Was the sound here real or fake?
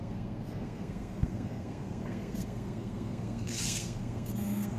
fake